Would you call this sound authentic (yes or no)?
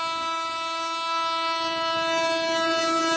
yes